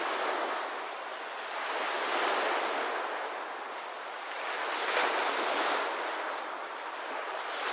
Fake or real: real